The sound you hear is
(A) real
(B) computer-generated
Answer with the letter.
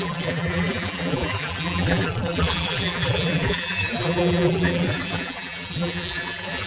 B